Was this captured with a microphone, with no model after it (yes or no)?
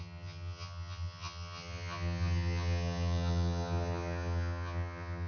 no